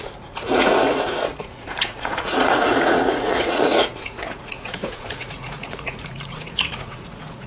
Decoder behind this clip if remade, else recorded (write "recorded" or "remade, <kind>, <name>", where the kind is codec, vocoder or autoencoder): remade, vocoder, Vocos